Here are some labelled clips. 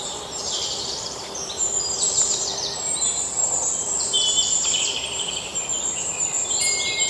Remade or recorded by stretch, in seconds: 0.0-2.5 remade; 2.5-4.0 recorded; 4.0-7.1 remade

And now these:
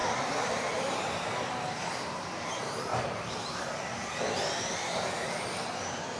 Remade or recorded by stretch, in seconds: 0.0-2.5 remade; 2.5-2.9 recorded; 2.9-3.6 remade; 3.6-6.2 recorded

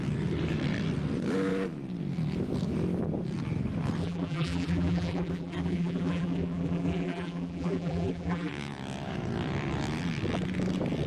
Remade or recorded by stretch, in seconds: 0.0-4.0 recorded; 4.0-8.5 remade; 8.5-11.1 recorded

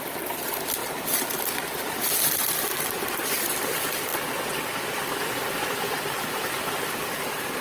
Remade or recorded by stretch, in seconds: 0.0-7.6 remade

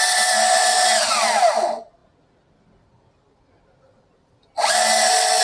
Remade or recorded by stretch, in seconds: 0.0-5.4 recorded